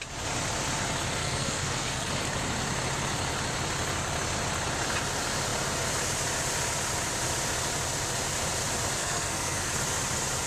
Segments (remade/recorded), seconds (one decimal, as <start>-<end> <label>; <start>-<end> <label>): 0.0-1.2 recorded; 1.2-2.1 remade; 2.1-9.0 recorded; 9.0-9.7 remade; 9.7-10.5 recorded